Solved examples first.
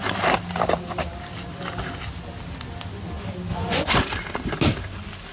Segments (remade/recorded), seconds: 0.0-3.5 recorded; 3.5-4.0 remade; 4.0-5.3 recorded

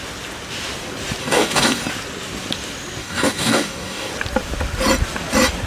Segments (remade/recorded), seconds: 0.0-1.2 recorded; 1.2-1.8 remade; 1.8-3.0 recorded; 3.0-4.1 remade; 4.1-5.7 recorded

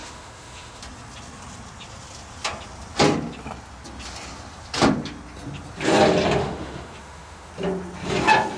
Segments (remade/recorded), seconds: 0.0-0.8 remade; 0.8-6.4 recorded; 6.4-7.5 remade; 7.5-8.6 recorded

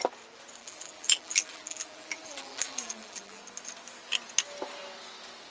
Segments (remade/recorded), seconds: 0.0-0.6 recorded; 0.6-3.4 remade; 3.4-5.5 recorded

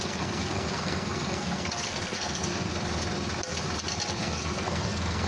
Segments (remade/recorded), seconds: 0.0-2.7 remade; 2.7-4.1 recorded; 4.1-5.3 remade